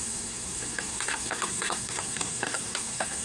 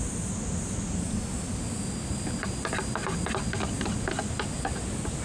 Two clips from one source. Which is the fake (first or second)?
first